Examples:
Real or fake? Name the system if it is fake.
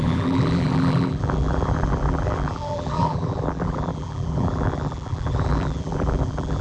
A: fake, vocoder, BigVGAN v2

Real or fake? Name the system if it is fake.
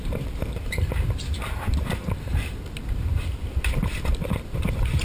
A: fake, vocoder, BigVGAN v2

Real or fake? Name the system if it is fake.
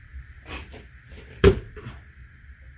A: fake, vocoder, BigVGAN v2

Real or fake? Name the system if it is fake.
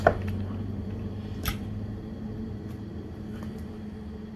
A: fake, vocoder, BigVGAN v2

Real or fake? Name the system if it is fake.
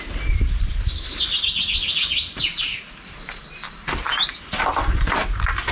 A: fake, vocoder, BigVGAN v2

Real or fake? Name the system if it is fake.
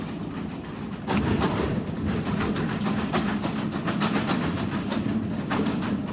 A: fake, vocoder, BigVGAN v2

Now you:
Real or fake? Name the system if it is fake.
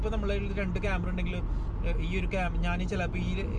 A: real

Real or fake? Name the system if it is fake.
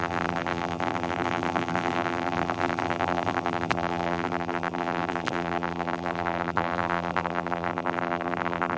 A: fake, vocoder, BigVGAN v2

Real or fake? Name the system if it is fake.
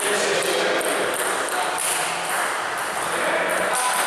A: real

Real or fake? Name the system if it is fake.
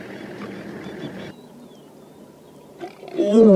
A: fake, vocoder, BigVGAN v2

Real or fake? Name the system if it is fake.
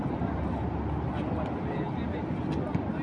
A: real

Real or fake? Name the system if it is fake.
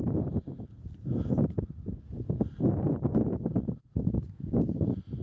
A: real